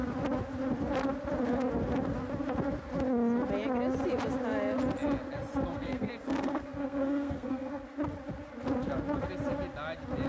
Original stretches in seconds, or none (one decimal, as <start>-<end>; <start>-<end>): 0.0-5.7; 7.8-10.3